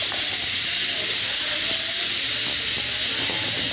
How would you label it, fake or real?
real